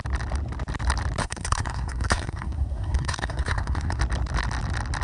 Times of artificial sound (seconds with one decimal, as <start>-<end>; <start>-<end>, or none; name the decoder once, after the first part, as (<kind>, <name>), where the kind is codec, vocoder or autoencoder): 1.2-4.0 (codec, SNAC)